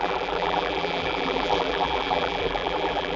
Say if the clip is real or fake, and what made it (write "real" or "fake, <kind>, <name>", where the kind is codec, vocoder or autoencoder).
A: fake, vocoder, BigVGAN v2